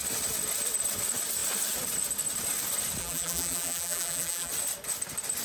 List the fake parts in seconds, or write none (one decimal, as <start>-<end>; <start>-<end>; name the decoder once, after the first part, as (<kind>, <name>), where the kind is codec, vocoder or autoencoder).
3.0-4.5 (vocoder, BigVGAN v2)